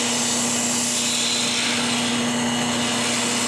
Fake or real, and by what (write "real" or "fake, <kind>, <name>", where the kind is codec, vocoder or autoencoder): real